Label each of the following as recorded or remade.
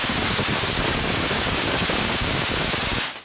remade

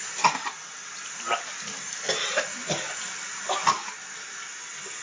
recorded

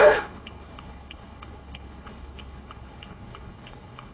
remade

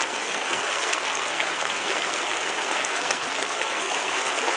remade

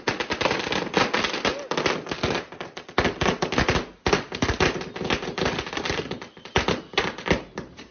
recorded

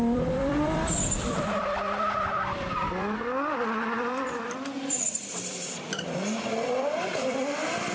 remade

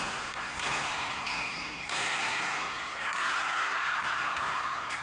remade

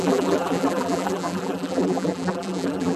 remade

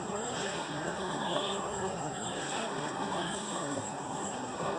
remade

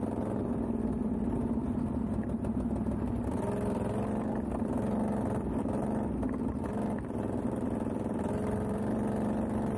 recorded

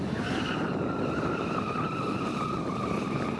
remade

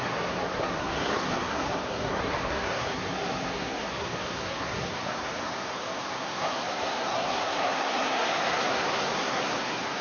remade